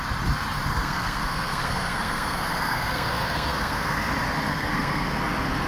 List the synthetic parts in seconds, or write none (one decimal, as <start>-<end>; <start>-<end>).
0.7-4.1; 4.5-5.2